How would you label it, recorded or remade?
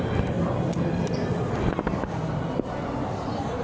recorded